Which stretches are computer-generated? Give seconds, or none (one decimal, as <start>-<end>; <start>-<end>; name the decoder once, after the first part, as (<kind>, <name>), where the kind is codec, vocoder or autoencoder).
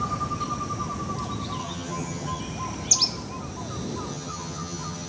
1.6-2.4 (vocoder, HiFi-GAN); 4.1-5.1